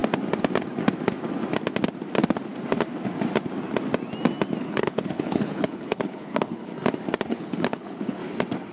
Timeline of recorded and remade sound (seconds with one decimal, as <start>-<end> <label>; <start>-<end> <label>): 0.0-4.6 recorded; 4.6-6.7 remade; 6.7-7.3 recorded; 7.3-8.2 remade; 8.2-8.7 recorded